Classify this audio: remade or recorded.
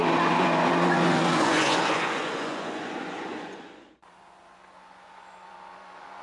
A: remade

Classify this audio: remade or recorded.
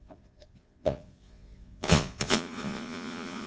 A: remade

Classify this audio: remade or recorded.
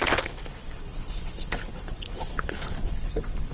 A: remade